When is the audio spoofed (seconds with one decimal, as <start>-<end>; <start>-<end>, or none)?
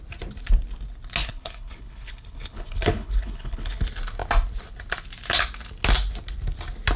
1.2-3.8